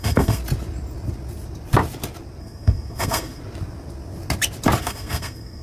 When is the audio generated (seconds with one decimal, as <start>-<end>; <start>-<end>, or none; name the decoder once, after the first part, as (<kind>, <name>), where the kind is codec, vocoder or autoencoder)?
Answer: 0.0-0.4 (codec, SNAC); 2.4-3.4; 4.8-5.6